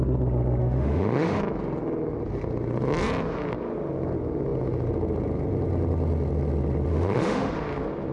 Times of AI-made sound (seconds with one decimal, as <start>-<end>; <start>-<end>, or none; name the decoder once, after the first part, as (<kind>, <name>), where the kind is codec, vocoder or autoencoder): 0.6-1.4 (autoencoder, DAC-VAE); 6.9-7.5